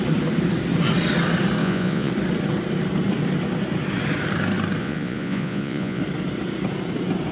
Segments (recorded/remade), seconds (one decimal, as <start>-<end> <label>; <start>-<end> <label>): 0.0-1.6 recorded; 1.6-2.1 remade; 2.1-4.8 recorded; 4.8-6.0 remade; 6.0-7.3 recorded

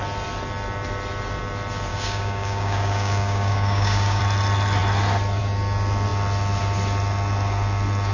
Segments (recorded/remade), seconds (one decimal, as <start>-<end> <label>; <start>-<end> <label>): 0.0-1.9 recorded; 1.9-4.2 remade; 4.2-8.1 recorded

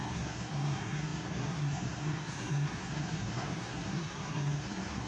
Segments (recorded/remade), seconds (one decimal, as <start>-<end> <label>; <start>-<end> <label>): 0.0-5.1 remade